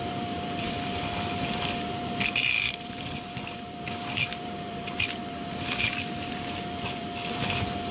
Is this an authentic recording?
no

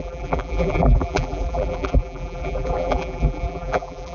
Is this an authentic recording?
no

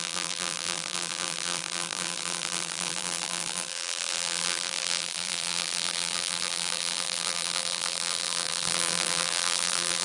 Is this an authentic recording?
no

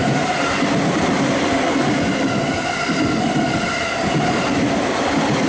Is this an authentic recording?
yes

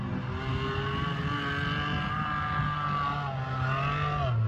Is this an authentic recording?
yes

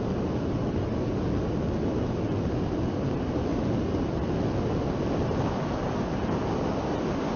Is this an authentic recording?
yes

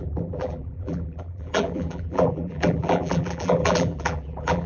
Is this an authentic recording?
no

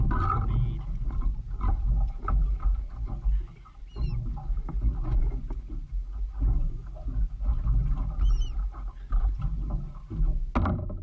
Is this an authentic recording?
yes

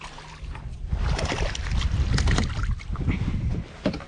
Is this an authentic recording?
yes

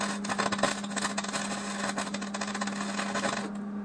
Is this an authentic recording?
yes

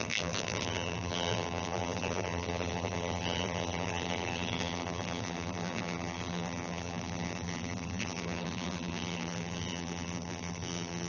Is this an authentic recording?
no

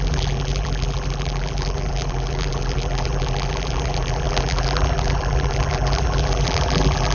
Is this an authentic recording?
no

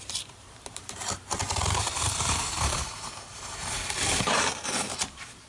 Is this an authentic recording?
no